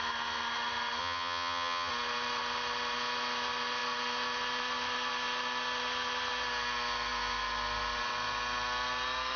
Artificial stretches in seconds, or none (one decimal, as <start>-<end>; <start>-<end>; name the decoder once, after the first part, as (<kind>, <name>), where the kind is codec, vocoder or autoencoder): 1.0-1.9 (vocoder, HiFi-GAN)